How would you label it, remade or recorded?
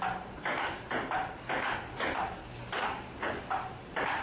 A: recorded